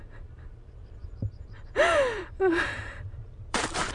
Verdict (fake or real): fake